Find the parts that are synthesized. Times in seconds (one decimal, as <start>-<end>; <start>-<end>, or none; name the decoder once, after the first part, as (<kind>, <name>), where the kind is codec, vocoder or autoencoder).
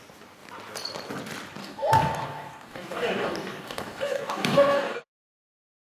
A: 1.6-5.1 (codec, DAC)